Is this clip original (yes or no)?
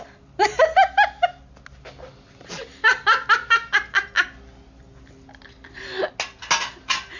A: yes